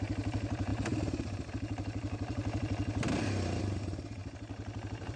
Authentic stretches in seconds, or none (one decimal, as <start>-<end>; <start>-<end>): none